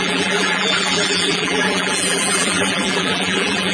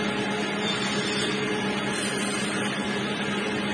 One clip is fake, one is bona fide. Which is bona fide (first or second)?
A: second